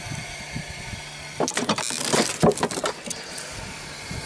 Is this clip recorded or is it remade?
recorded